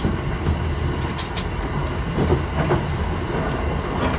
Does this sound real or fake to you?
real